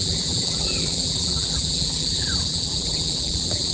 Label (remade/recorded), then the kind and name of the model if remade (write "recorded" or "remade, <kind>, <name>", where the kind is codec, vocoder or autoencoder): remade, vocoder, BigVGAN v2